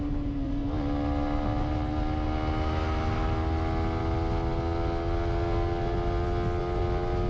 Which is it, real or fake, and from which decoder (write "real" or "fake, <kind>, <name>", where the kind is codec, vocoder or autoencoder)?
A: real